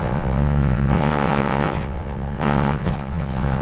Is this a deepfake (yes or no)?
yes